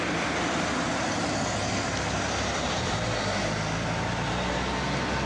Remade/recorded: recorded